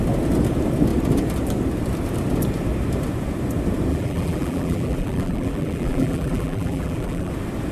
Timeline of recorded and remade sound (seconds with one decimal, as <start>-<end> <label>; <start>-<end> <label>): 0.0-3.9 recorded; 3.9-7.3 remade; 7.3-7.7 recorded